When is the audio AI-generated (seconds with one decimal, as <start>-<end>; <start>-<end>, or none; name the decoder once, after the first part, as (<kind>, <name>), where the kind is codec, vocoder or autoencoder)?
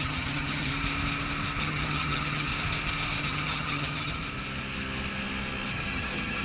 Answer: 0.0-0.7 (vocoder, HiFi-GAN); 1.6-2.5; 3.2-4.2; 5.7-6.4